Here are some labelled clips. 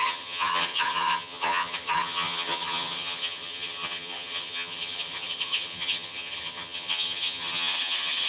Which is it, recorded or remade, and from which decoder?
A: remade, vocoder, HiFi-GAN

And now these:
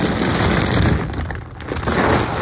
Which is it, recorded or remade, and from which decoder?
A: recorded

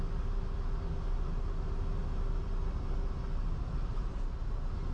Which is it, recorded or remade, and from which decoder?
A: recorded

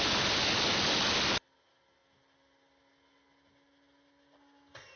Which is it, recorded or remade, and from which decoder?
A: recorded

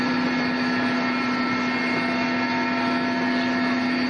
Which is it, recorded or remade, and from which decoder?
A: recorded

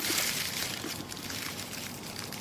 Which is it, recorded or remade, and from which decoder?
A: remade, vocoder, BigVGAN v2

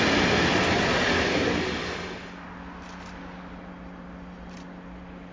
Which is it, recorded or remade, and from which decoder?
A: recorded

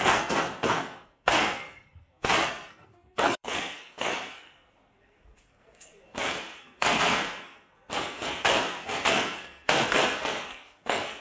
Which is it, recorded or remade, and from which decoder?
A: remade, codec, SNAC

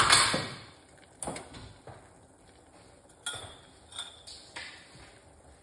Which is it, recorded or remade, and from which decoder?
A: recorded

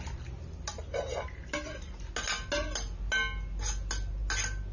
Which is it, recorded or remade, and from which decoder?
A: recorded